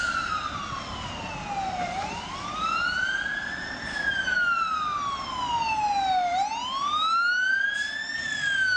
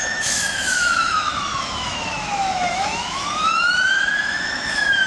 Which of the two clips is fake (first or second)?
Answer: second